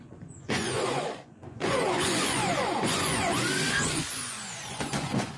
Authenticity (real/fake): fake